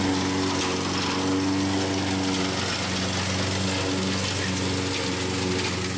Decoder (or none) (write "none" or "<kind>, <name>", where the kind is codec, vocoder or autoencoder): none